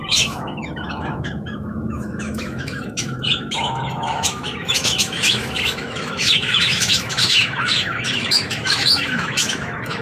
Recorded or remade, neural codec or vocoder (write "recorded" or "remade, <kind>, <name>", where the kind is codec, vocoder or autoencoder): remade, autoencoder, DAC-VAE